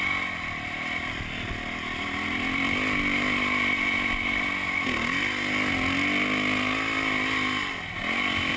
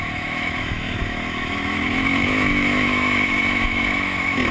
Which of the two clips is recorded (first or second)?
first